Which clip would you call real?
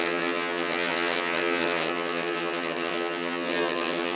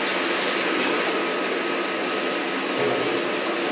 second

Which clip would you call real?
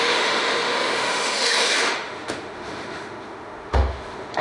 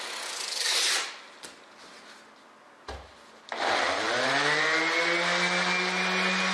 second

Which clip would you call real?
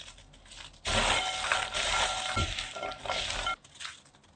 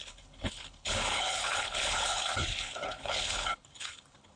first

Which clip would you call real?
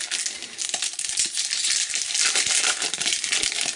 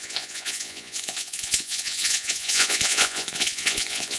first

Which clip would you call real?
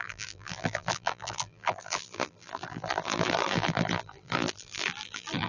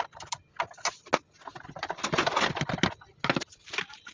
second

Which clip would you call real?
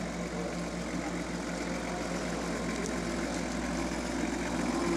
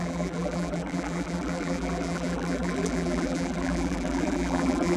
first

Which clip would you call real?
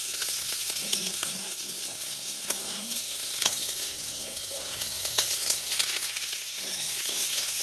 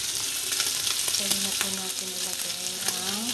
second